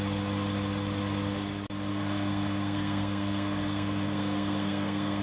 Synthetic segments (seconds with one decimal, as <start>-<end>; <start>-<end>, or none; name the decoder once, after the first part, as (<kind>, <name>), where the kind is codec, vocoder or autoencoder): 1.9-5.2 (codec, SNAC)